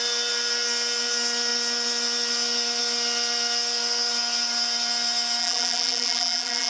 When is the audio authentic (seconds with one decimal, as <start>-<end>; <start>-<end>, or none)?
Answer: 0.0-5.4